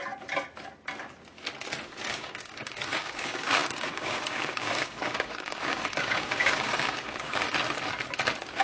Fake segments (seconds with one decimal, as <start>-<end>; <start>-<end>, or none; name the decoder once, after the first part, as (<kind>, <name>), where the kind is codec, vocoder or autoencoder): 2.1-7.4 (codec, DAC)